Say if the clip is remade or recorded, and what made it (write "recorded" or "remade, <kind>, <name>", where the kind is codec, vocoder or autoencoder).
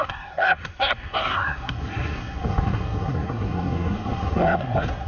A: remade, codec, SNAC